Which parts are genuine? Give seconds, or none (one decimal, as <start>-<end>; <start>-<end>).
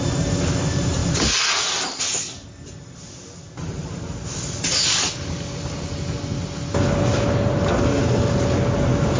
0.0-9.2